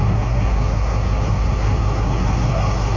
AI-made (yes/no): yes